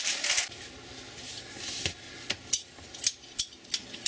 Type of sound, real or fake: real